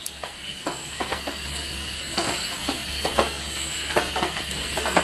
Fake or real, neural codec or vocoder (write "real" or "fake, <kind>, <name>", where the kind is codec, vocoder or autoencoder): fake, codec, SNAC